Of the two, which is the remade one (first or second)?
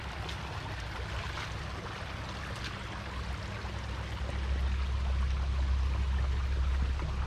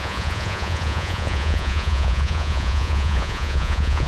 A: second